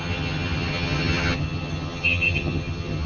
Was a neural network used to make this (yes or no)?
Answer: yes